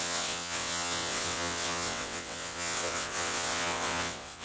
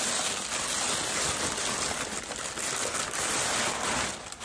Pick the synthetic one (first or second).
first